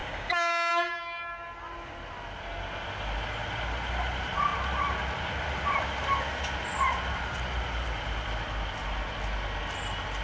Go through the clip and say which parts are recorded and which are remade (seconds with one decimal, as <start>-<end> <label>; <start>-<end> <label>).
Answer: 0.0-0.7 remade; 0.7-10.2 recorded

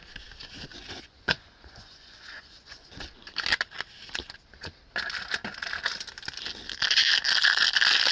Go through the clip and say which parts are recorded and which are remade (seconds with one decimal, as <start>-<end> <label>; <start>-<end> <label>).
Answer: 0.0-0.7 recorded; 0.7-2.9 remade; 2.9-8.1 recorded

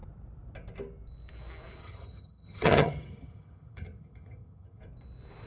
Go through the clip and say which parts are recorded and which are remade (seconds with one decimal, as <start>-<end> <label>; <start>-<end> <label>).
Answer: 0.0-1.8 recorded; 1.8-4.8 remade; 4.8-5.5 recorded

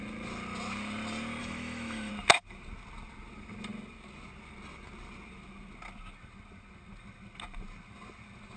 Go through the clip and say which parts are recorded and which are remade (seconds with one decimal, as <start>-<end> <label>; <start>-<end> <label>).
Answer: 0.0-1.4 recorded; 1.4-2.1 remade; 2.1-8.6 recorded